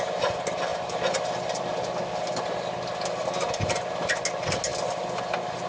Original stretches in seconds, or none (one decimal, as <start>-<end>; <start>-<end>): 0.0-5.7